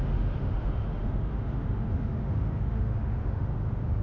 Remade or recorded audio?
remade